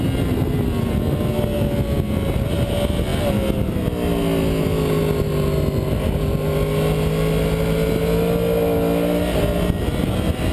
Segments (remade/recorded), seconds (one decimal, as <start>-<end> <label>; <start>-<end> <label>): 0.0-10.5 recorded